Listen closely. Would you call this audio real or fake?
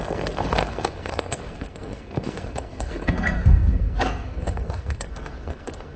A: fake